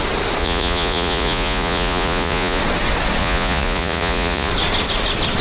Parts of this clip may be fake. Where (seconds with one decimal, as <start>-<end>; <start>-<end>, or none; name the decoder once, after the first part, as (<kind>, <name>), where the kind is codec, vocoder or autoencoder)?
0.4-2.6 (vocoder, Vocos); 3.2-4.5